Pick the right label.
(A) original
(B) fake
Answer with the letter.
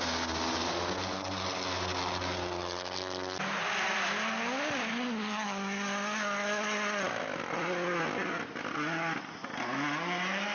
A